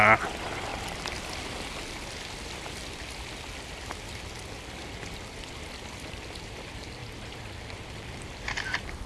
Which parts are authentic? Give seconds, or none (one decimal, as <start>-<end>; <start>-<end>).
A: 0.7-4.7